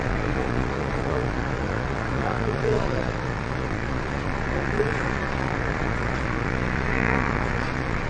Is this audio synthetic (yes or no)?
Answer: yes